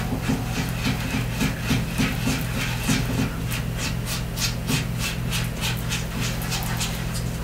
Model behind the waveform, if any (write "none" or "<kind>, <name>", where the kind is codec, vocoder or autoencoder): none